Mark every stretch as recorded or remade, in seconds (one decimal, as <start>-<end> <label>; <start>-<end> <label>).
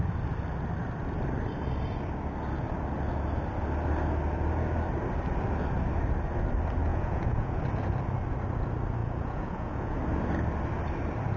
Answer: 0.0-6.9 recorded; 6.9-7.6 remade; 7.6-9.0 recorded; 9.0-10.0 remade; 10.0-11.4 recorded